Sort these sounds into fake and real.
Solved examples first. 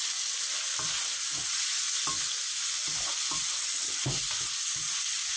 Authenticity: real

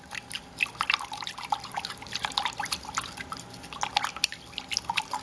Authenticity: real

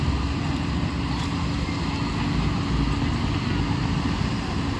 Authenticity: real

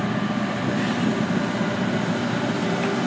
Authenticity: real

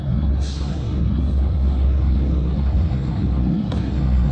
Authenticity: fake